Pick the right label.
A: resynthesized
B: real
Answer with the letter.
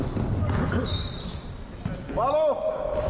B